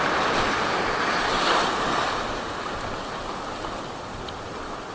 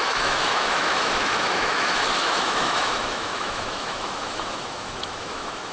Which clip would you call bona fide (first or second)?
first